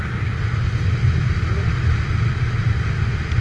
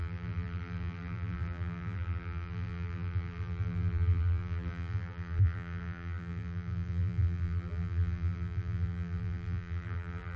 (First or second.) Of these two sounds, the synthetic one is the second